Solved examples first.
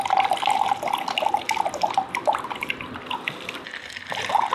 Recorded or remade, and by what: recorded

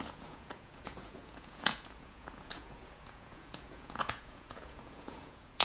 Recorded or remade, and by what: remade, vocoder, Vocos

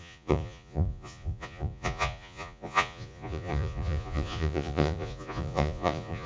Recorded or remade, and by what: remade, vocoder, Vocos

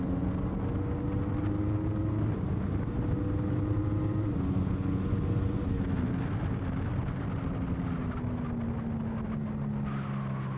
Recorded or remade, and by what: recorded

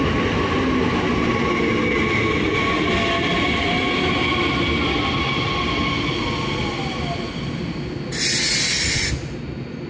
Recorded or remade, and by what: recorded